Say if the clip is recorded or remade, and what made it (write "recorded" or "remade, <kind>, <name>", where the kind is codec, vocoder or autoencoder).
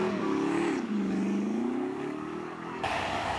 remade, codec, DAC